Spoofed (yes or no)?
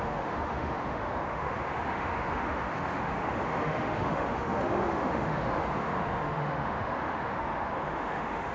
yes